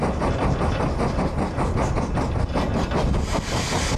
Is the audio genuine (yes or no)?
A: yes